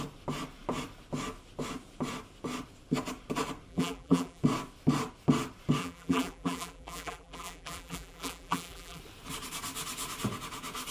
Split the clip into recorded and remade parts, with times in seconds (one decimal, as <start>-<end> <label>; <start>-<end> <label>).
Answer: 0.0-3.7 recorded; 3.7-4.4 remade; 4.4-5.8 recorded; 5.8-9.0 remade; 9.0-10.9 recorded